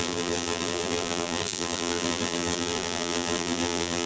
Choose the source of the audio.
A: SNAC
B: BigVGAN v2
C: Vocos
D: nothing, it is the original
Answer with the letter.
B